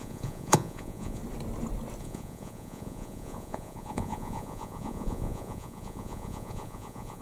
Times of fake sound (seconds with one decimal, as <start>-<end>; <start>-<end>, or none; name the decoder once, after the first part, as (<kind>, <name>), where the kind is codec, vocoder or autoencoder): 0.0-1.2 (vocoder, Vocos); 2.0-7.2